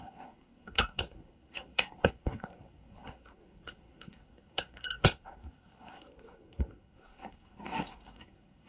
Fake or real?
fake